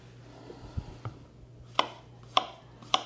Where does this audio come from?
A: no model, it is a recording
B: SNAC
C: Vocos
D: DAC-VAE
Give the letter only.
A